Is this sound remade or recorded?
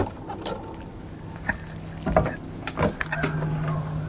recorded